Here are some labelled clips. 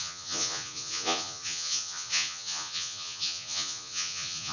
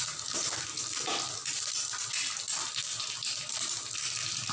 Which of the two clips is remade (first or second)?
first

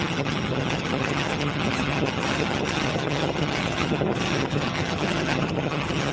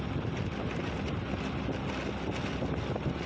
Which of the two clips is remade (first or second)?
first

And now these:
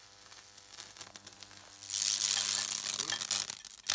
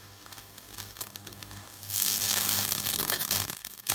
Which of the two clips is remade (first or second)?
second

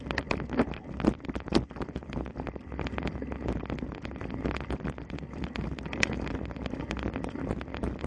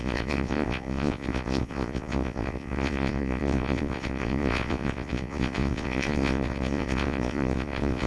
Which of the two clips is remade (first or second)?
second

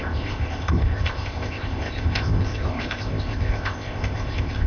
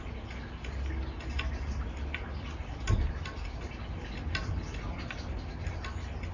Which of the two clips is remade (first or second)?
first